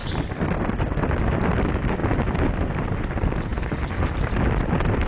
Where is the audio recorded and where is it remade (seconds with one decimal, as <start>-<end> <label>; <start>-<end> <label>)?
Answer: 0.0-5.1 recorded